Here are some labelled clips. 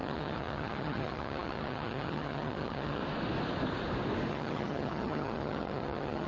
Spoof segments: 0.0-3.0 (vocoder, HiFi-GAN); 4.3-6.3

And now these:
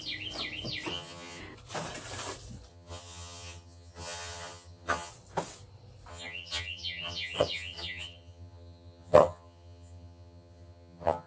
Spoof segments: 0.9-1.4 (vocoder, HiFi-GAN); 2.7-5.1; 6.1-11.3

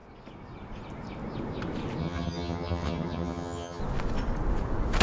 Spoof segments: 2.0-3.8 (vocoder, HiFi-GAN)